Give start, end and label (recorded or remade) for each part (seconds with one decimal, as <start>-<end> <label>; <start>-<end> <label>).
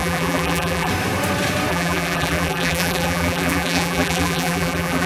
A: 0.0-0.9 remade; 0.9-1.7 recorded; 1.7-5.1 remade